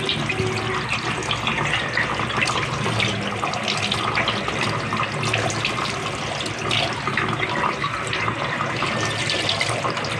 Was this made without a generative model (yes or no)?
yes